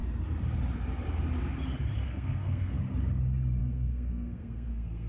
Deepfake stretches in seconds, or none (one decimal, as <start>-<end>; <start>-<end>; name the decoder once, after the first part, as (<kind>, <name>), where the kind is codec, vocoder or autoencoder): 2.1-2.8 (codec, SNAC); 3.6-5.1

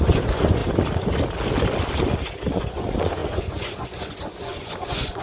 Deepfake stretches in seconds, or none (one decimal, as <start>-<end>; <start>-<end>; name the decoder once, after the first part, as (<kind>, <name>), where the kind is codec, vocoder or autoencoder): 0.0-0.6 (vocoder, Vocos); 2.5-5.2

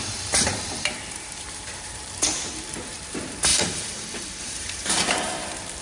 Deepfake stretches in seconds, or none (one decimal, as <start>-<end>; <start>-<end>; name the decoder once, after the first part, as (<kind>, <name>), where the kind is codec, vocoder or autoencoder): 0.0-3.5 (vocoder, BigVGAN v2); 4.4-5.8

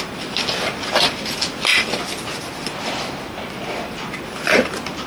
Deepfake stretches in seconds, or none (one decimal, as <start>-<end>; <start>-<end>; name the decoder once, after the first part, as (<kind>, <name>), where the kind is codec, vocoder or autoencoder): 1.7-5.1 (vocoder, BigVGAN v2)

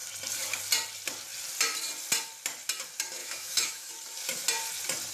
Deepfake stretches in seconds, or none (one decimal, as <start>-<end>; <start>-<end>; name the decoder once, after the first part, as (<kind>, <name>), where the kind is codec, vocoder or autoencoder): 3.2-3.9 (autoencoder, DAC-VAE)

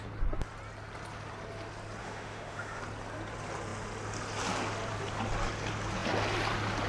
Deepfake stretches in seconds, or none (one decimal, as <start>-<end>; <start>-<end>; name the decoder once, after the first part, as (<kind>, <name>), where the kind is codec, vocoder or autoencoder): 2.0-2.8 (autoencoder, DAC-VAE)

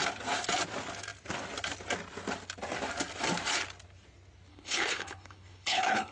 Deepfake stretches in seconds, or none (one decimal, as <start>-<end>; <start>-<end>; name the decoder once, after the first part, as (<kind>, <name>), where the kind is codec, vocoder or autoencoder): 4.5-6.1 (codec, HILCodec)